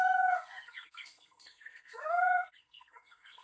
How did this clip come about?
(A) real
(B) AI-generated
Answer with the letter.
B